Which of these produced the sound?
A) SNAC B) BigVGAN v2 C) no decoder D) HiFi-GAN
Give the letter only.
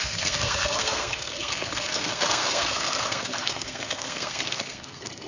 A